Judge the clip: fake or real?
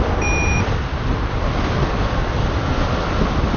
fake